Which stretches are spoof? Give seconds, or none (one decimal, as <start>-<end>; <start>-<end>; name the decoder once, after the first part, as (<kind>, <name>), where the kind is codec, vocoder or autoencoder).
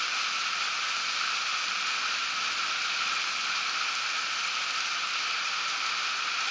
none